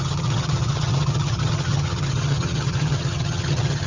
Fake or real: fake